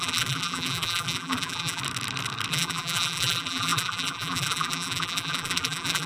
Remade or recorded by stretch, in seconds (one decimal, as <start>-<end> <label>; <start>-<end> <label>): 0.0-1.8 remade; 1.8-2.5 recorded; 2.5-6.1 remade